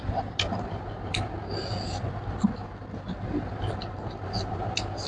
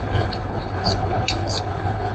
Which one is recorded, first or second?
first